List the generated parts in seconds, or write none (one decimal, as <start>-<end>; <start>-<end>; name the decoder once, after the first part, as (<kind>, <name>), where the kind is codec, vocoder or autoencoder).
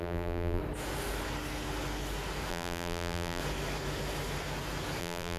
0.0-0.6 (vocoder, BigVGAN v2); 2.5-3.4; 5.0-5.4